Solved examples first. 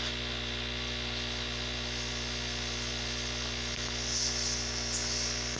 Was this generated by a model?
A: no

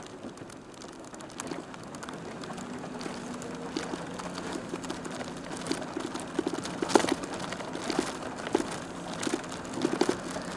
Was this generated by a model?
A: no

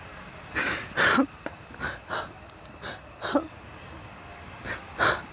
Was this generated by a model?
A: no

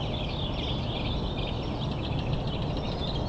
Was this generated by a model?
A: no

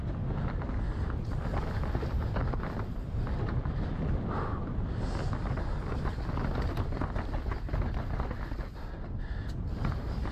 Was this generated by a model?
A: no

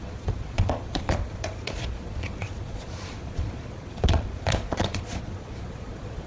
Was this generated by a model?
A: yes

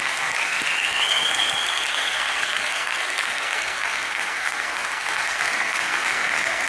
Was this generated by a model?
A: yes